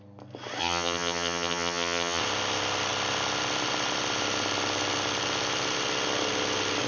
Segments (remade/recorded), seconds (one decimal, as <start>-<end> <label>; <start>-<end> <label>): 0.0-0.6 recorded; 0.6-2.2 remade; 2.2-6.9 recorded